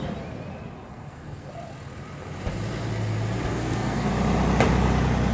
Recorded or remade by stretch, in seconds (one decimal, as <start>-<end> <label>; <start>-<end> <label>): 0.0-0.9 recorded; 0.9-1.5 remade; 1.5-3.5 recorded; 3.5-4.1 remade; 4.1-5.3 recorded